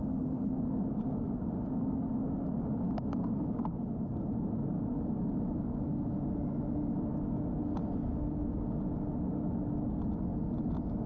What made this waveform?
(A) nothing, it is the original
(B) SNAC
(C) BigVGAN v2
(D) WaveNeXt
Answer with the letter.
A